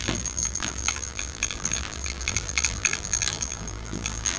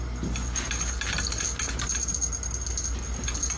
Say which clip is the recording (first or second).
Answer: second